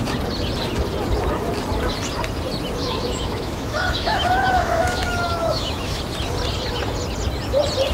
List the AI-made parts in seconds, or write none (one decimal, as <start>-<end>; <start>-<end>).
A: 2.8-6.0